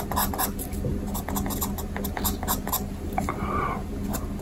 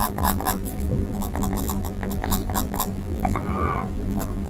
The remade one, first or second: second